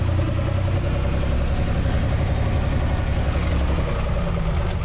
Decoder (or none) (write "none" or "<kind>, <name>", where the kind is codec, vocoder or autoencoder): none